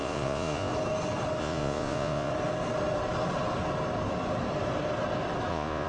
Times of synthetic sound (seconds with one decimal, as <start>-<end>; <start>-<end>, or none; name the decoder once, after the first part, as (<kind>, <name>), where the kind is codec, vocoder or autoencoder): 0.0-0.7 (vocoder, Vocos); 1.4-2.3; 5.5-5.9